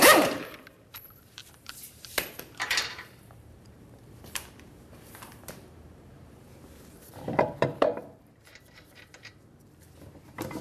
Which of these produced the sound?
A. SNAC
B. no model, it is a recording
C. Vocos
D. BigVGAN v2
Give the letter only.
D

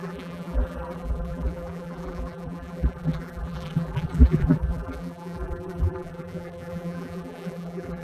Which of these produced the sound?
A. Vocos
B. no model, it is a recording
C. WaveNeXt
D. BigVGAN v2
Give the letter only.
D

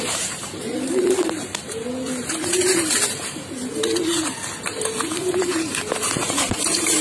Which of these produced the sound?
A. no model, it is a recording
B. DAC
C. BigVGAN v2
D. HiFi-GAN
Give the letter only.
C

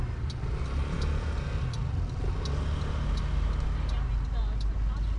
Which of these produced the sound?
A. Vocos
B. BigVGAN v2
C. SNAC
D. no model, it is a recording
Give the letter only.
D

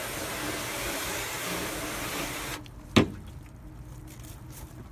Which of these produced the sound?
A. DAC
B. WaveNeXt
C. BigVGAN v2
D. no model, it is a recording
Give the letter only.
D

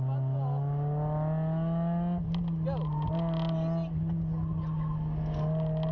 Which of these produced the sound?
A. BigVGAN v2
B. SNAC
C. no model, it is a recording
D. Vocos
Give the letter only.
C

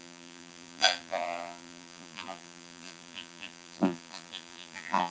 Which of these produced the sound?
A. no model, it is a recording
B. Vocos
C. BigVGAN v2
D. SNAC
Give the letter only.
C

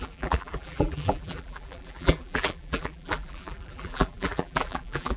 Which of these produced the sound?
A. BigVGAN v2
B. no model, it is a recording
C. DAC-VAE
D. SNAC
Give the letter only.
A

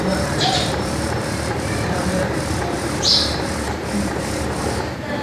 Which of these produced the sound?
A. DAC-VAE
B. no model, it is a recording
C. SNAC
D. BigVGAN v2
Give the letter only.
D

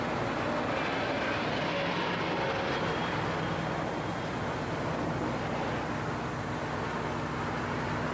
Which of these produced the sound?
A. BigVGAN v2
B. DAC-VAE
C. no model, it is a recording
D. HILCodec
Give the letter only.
C